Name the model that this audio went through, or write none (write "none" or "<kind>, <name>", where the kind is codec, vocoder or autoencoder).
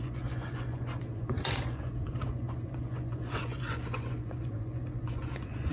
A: vocoder, Vocos